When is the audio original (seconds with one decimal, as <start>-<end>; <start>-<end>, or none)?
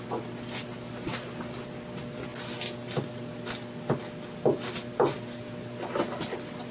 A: 0.0-6.7